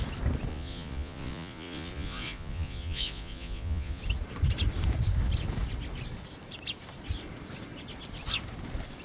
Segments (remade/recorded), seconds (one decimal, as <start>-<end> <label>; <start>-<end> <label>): 0.0-0.5 recorded; 0.5-4.0 remade; 4.0-9.0 recorded